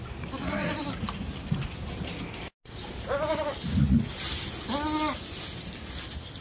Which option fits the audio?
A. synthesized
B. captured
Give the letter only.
B